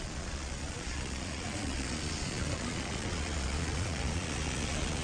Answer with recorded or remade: remade